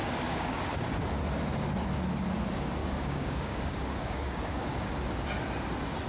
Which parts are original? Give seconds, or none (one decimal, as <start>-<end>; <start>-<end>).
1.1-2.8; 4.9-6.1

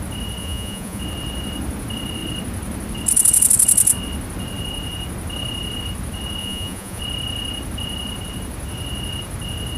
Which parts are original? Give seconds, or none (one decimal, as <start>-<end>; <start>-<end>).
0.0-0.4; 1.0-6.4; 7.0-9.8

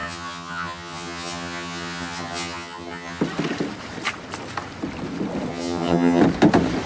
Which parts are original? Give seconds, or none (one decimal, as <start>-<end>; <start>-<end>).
3.2-5.5; 6.2-6.9

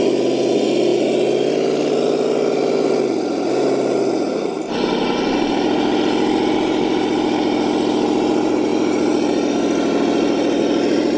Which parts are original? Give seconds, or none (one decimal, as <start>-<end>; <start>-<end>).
0.0-11.2

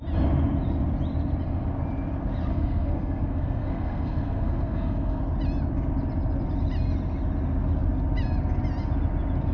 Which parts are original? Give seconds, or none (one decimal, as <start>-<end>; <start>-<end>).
0.0-2.5; 5.2-9.5